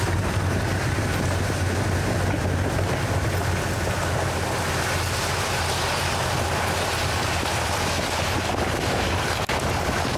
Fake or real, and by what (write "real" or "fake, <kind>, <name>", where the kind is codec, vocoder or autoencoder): real